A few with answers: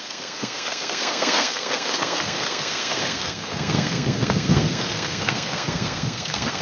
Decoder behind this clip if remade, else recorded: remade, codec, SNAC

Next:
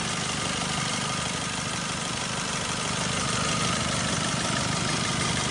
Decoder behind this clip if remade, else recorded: recorded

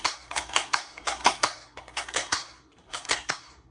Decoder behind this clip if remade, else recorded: remade, codec, SNAC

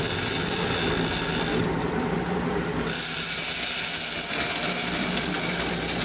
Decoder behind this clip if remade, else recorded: recorded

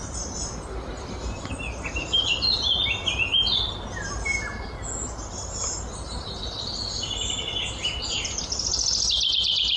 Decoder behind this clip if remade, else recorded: recorded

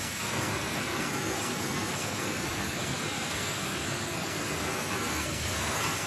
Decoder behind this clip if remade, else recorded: remade, codec, SNAC